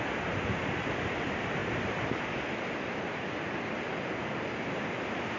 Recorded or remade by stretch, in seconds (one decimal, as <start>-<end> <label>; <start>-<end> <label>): 0.0-5.4 recorded